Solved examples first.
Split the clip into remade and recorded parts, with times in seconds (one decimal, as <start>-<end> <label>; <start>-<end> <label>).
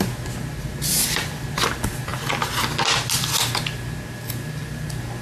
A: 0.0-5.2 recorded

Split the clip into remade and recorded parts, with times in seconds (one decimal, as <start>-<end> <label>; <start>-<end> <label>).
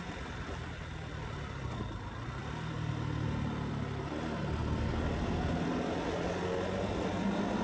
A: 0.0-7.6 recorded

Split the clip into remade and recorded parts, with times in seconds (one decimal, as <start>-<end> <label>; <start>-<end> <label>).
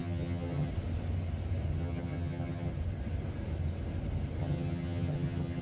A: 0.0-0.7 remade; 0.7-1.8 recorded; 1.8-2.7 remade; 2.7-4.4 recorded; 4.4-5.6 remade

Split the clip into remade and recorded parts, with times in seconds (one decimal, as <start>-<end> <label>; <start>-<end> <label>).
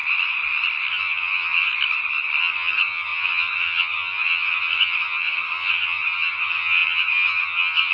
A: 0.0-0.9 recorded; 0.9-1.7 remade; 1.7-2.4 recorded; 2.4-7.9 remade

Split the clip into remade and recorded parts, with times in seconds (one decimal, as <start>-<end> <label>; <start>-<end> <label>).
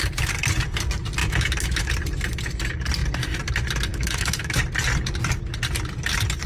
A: 0.0-1.2 recorded; 1.2-1.9 remade; 1.9-3.9 recorded; 3.9-4.6 remade; 4.6-6.5 recorded